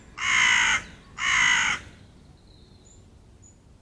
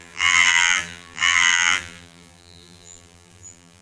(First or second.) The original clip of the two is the first